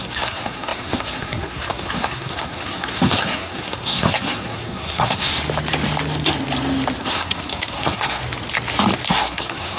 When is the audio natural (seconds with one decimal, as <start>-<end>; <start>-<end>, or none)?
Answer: 5.3-7.0; 8.2-9.1